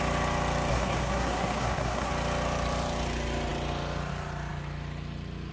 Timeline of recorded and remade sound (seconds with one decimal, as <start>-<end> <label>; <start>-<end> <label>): 0.0-0.7 recorded; 0.7-2.1 remade; 2.1-5.5 recorded